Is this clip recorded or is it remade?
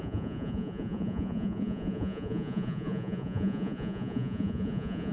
remade